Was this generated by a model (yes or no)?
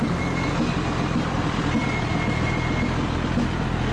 yes